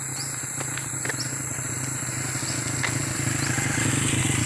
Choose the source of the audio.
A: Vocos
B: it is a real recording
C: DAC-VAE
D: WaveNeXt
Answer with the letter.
B